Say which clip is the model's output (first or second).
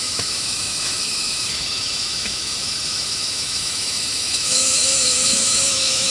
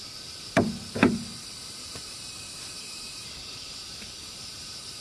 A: first